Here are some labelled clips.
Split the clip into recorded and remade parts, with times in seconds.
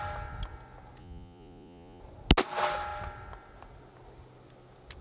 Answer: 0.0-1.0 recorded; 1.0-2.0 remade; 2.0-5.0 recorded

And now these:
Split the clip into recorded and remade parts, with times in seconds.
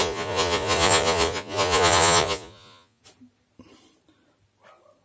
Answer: 0.0-3.0 remade; 3.0-5.0 recorded